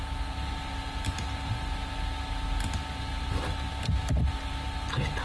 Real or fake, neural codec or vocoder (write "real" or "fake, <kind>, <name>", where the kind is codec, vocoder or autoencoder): real